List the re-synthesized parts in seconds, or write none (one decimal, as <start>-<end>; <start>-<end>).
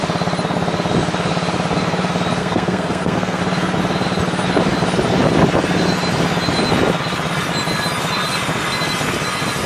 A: 2.4-3.4